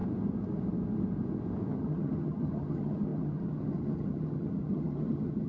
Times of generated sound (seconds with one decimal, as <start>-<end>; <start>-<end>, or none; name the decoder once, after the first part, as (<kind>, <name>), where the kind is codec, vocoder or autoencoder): 1.7-5.5 (vocoder, HiFi-GAN)